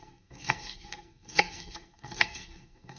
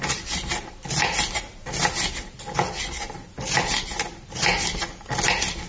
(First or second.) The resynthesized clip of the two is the first